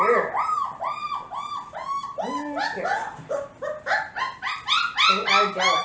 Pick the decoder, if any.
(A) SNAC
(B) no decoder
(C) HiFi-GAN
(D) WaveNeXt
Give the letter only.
B